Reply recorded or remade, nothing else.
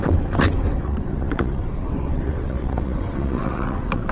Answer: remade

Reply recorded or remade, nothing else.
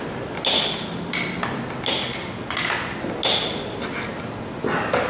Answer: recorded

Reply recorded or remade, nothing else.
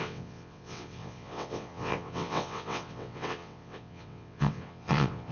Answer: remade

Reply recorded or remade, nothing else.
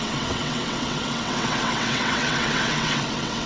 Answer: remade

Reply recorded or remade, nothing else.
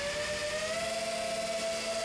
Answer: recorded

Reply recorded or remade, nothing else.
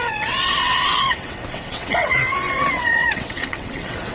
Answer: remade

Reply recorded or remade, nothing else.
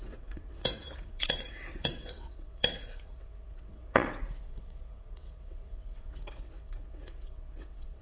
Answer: remade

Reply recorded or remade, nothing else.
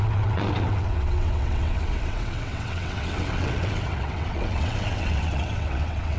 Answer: remade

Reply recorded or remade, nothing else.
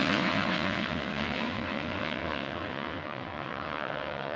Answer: remade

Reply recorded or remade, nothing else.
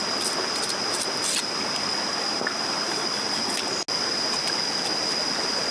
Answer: recorded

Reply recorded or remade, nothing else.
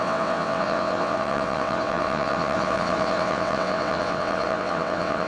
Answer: remade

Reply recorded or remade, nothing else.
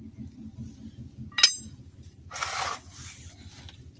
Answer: recorded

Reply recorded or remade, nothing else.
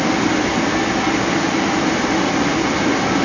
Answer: recorded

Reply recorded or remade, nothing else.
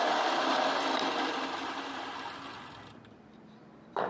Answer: recorded